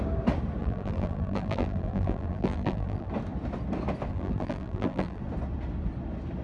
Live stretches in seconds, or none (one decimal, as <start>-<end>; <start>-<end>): 0.0-0.6; 3.1-4.1; 5.2-6.4